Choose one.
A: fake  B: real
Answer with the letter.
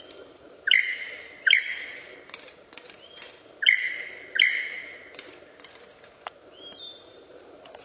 A